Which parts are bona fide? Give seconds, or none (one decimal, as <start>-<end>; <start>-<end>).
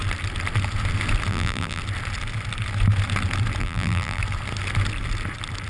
0.0-1.3; 1.8-3.6; 4.2-5.7